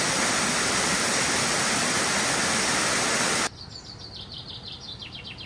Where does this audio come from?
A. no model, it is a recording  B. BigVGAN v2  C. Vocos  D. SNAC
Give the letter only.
A